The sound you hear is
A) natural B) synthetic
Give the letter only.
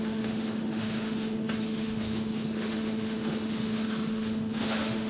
B